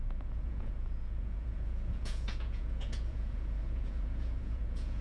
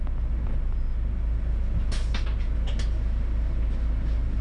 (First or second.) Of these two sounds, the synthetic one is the first